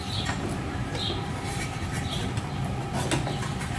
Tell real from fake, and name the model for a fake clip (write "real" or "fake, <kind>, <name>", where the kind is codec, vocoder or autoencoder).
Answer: real